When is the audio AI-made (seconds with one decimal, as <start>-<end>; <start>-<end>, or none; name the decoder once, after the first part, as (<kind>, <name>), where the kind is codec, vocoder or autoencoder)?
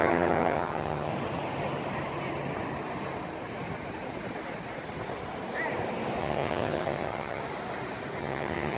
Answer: 0.0-1.1 (vocoder, HiFi-GAN); 6.2-7.4; 8.2-8.8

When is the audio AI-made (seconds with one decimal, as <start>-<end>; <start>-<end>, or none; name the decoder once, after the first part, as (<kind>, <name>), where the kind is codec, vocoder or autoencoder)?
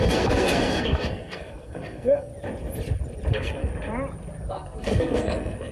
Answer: 0.0-2.3 (codec, SNAC); 3.3-3.7; 4.5-5.7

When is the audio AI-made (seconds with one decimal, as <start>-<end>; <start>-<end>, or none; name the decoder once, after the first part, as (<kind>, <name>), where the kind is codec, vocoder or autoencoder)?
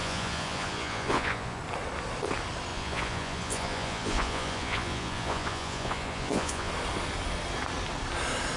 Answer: 0.0-1.6 (vocoder, Vocos); 2.7-6.7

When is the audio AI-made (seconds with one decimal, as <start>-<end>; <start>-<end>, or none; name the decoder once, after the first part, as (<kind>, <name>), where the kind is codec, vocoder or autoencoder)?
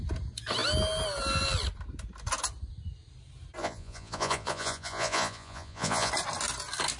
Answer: 3.6-6.1 (vocoder, Vocos)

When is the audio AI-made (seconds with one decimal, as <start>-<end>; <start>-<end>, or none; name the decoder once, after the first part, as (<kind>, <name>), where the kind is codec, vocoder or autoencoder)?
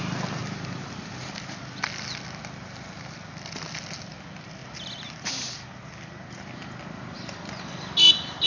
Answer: 0.4-1.6 (vocoder, BigVGAN v2)